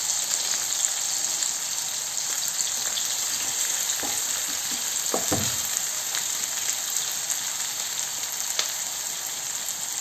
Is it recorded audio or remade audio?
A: recorded